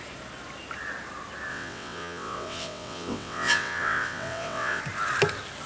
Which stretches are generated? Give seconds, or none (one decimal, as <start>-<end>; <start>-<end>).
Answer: 1.5-4.8